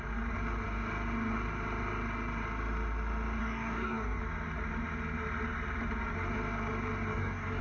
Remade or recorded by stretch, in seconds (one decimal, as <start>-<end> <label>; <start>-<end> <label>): 0.0-3.4 recorded; 3.4-4.2 remade; 4.2-7.1 recorded; 7.1-7.6 remade